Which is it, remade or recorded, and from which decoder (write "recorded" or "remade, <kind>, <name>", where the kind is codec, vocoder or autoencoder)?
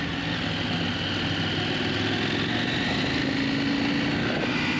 recorded